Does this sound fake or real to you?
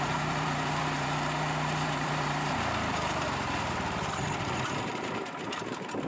fake